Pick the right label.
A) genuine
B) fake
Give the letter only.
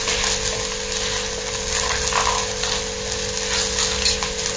A